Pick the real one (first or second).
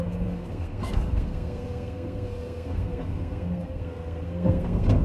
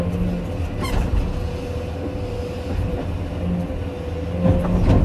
second